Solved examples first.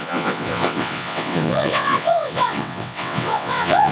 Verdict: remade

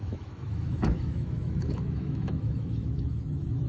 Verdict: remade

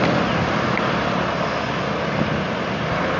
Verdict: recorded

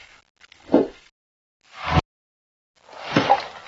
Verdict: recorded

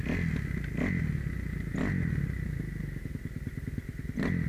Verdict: recorded